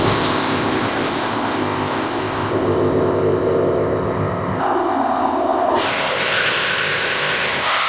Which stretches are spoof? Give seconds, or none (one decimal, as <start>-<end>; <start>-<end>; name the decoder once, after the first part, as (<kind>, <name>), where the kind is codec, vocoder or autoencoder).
0.0-7.9 (codec, ZipCodec)